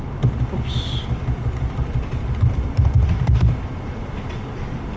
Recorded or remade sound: recorded